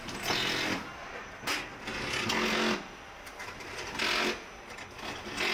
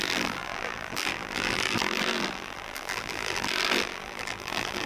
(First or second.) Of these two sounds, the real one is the first